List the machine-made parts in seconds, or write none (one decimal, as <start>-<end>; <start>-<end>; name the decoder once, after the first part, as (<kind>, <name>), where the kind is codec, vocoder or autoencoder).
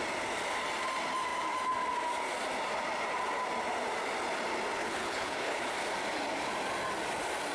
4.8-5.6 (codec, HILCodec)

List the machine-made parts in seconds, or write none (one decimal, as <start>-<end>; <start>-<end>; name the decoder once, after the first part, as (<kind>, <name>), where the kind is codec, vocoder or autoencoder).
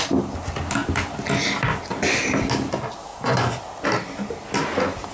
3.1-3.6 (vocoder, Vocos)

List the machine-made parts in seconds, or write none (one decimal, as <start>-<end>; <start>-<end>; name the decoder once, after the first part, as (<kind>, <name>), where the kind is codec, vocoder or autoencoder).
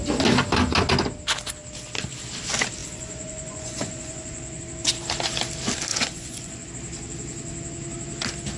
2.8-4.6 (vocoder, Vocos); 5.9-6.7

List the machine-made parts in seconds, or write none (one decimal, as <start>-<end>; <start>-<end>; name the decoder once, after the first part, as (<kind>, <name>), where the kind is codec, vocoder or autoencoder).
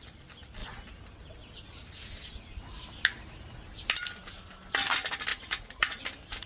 5.3-6.0 (vocoder, Vocos)